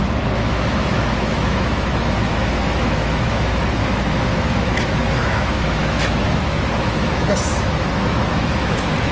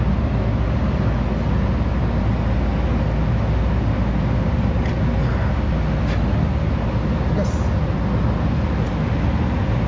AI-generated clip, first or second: first